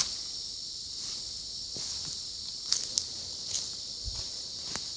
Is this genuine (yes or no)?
yes